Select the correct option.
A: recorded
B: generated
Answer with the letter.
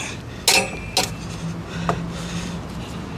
A